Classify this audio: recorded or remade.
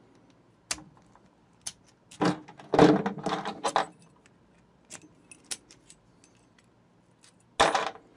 recorded